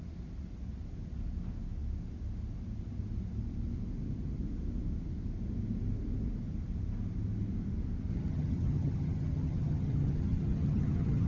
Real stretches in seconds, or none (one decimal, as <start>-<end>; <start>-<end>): 0.0-8.1